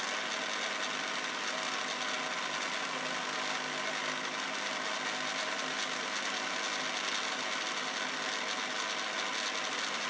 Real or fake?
real